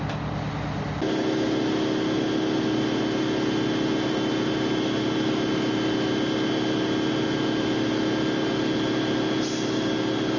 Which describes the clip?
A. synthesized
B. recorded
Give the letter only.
B